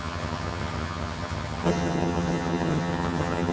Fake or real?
fake